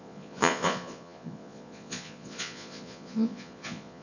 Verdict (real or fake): fake